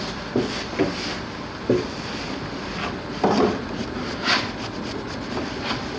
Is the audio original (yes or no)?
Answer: yes